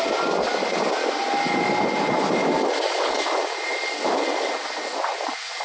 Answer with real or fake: real